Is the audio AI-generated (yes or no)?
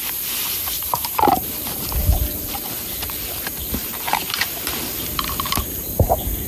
yes